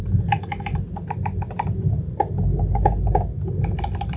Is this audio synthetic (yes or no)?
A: no